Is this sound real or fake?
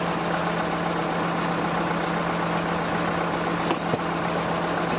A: real